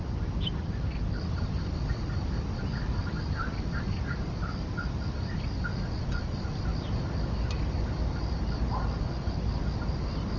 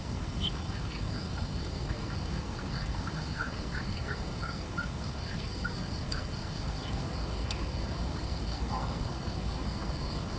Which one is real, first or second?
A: first